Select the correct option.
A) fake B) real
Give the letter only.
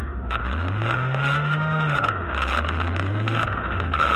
A